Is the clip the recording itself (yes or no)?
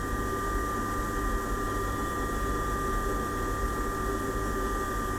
yes